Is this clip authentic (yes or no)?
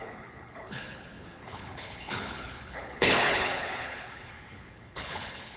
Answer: no